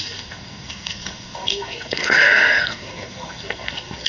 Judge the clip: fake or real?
fake